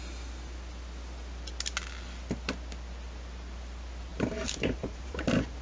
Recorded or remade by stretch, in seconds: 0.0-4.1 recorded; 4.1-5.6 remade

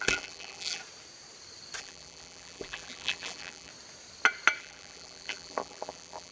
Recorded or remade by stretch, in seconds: 0.0-0.8 remade; 0.8-1.8 recorded; 1.8-3.7 remade; 3.7-4.6 recorded; 4.6-6.3 remade